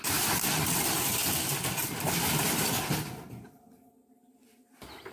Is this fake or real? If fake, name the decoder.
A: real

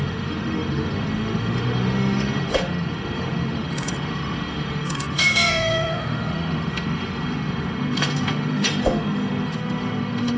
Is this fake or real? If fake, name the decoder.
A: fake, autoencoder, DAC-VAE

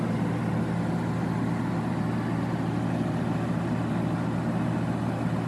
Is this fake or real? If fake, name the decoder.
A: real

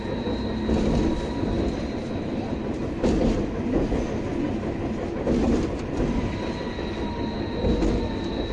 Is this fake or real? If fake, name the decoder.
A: real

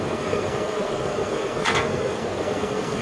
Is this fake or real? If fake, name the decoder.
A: fake, codec, SNAC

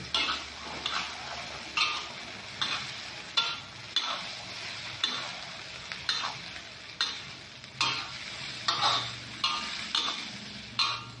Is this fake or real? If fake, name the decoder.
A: real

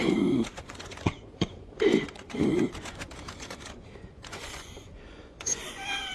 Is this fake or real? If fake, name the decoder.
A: fake, vocoder, Vocos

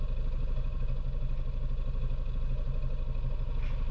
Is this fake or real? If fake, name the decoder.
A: real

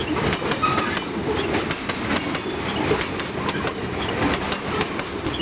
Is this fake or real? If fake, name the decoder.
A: real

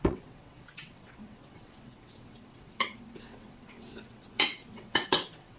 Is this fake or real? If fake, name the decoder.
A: fake, vocoder, WaveNeXt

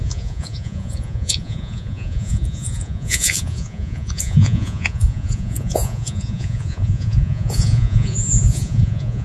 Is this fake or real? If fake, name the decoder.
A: fake, vocoder, Vocos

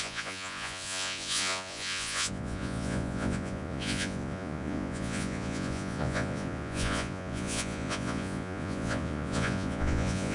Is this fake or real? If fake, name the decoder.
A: fake, vocoder, Vocos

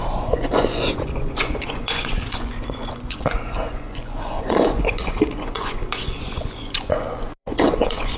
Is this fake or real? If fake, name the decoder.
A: fake, vocoder, Vocos